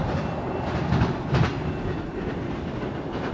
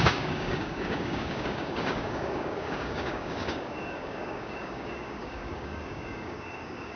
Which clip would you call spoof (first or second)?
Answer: second